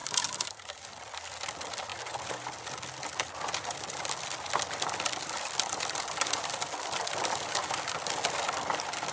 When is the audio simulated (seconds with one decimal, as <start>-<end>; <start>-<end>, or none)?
none